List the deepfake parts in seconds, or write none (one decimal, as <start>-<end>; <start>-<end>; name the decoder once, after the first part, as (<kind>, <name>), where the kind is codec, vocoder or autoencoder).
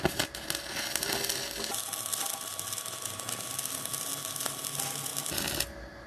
none